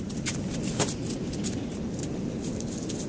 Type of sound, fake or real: real